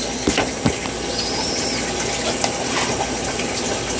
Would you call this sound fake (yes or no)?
no